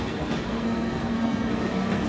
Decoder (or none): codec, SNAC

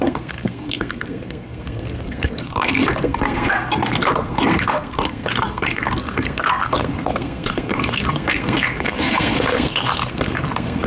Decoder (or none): codec, SNAC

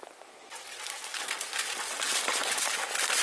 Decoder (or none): none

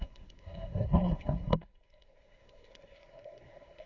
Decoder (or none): codec, SNAC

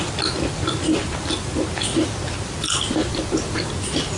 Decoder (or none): none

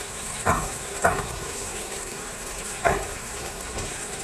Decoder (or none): codec, SNAC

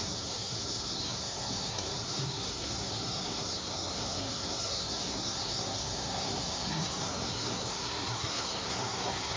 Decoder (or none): codec, SNAC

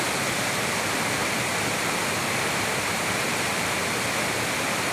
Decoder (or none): none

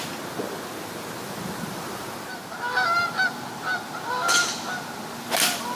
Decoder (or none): none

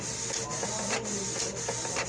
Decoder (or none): none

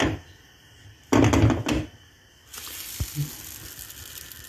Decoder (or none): none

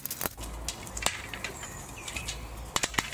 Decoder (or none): none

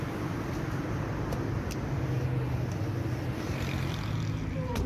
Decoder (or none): none